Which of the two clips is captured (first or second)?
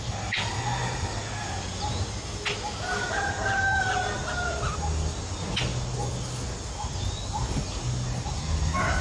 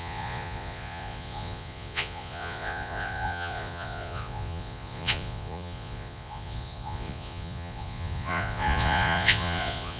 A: first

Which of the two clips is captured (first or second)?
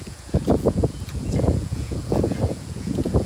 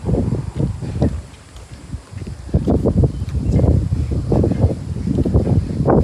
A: second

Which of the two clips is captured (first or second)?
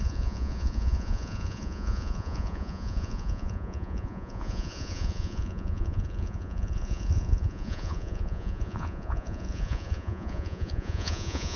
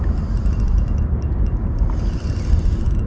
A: second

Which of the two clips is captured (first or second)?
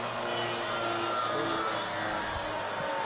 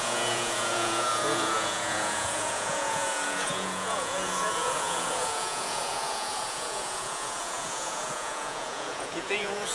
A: first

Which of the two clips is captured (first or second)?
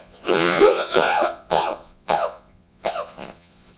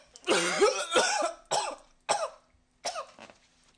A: second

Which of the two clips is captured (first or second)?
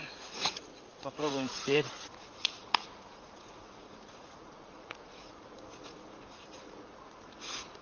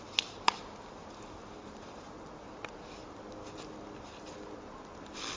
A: second